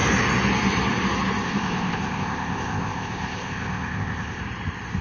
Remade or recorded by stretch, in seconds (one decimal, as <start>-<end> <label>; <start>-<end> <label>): 0.0-1.4 recorded; 1.4-4.4 remade; 4.4-5.0 recorded